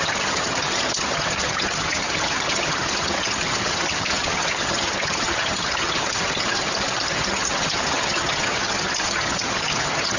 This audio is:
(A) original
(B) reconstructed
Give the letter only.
B